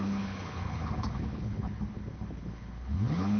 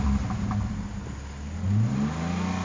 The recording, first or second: second